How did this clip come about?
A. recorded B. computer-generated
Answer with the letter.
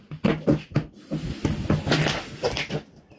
A